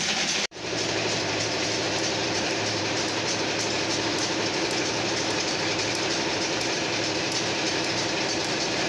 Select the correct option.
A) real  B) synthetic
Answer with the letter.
B